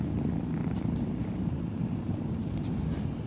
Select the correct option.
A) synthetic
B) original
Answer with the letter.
A